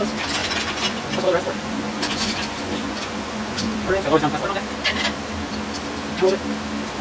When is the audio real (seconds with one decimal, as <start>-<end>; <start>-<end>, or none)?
0.0-0.4; 3.9-7.0